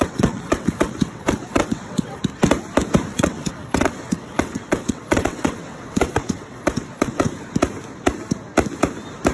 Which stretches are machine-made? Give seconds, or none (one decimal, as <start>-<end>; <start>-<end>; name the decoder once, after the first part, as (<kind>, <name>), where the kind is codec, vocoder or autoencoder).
0.0-2.2 (vocoder, WaveNeXt); 3.1-7.3